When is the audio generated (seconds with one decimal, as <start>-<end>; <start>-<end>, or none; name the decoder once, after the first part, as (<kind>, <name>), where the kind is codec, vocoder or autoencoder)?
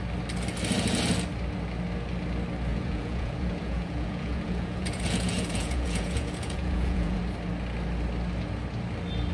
2.7-7.2 (vocoder, Vocos)